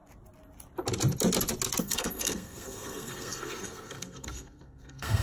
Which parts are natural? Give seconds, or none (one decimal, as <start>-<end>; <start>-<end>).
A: 0.0-1.8